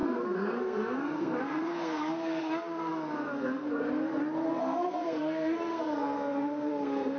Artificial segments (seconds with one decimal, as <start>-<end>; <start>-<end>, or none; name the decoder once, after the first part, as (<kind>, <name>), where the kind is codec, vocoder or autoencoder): 0.0-4.1 (codec, SNAC); 4.6-7.2